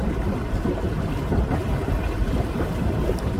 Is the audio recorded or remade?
remade